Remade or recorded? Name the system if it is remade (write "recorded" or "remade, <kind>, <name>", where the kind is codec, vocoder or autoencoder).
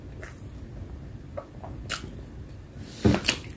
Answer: recorded